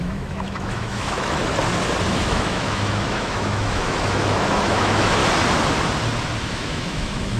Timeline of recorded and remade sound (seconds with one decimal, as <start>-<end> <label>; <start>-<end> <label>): 0.0-1.4 remade; 1.4-2.1 recorded; 2.1-5.2 remade; 5.2-6.5 recorded; 6.5-7.4 remade